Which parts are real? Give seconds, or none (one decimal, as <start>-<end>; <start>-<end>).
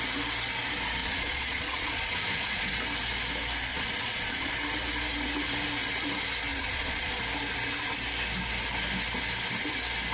0.0-1.0; 2.7-3.7; 4.5-6.5; 7.2-10.1